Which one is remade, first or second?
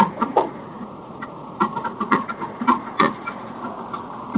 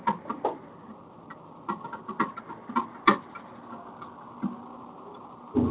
first